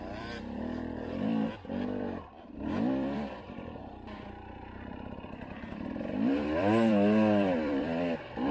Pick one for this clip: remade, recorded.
remade